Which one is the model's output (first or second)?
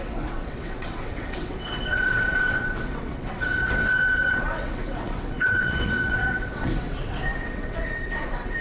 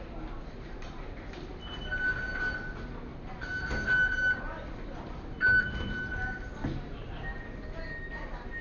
first